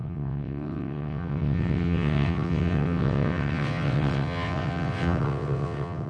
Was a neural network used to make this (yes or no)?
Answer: yes